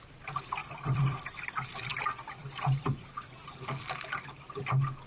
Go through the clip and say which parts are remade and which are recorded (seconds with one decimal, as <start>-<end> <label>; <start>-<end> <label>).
0.0-0.6 recorded; 0.6-1.2 remade; 1.2-1.9 recorded; 1.9-4.6 remade; 4.6-5.1 recorded